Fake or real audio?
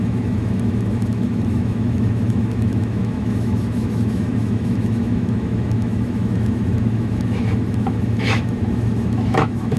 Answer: fake